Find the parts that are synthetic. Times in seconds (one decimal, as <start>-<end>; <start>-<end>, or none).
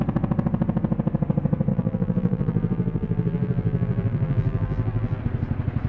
1.7-5.2